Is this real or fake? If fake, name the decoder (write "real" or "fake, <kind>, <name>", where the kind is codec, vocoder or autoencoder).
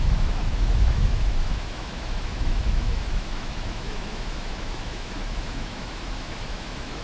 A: fake, autoencoder, DAC-VAE